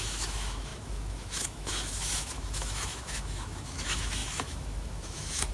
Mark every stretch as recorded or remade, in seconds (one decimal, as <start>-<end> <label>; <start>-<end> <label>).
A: 0.0-5.5 remade